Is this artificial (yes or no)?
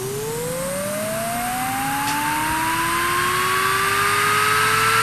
no